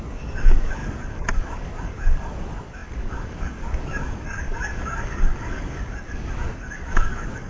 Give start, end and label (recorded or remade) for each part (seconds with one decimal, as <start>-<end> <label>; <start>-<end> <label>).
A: 0.0-7.5 remade